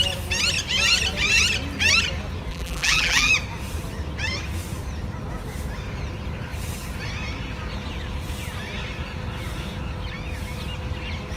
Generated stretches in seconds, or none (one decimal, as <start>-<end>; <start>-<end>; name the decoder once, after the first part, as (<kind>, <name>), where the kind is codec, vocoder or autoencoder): 2.5-3.3 (vocoder, BigVGAN v2)